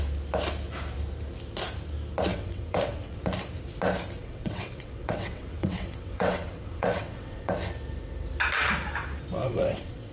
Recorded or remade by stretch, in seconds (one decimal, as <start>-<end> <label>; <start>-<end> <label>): 0.0-2.3 recorded; 2.3-3.2 remade; 3.2-4.2 recorded; 4.2-7.5 remade; 7.5-9.4 recorded; 9.4-10.1 remade